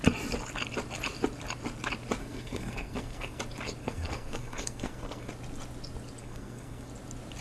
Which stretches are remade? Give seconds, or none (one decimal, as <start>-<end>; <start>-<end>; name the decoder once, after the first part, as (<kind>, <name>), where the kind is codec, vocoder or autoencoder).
2.2-3.4 (codec, SNAC); 3.8-5.3; 6.2-6.9